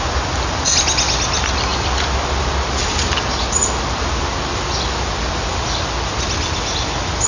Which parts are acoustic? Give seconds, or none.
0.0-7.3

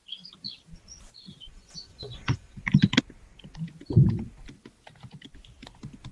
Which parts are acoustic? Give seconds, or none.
0.0-1.5; 2.6-6.1